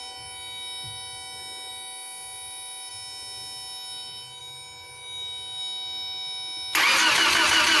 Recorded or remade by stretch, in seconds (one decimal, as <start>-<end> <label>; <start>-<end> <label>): 0.0-7.8 recorded